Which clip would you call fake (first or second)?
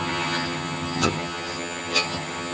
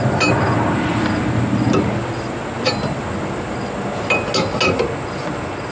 first